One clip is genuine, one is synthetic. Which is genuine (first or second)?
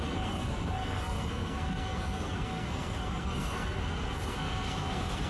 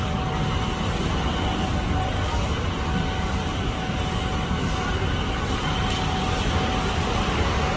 second